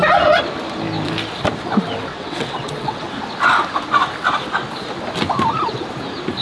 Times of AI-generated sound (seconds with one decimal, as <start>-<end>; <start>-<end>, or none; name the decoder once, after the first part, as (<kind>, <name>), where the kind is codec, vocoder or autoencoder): 2.1-3.1 (vocoder, WaveNeXt)